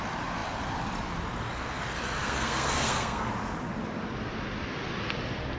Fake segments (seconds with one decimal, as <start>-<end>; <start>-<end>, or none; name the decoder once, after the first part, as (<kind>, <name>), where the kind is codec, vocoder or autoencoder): 2.2-3.3 (codec, SNAC)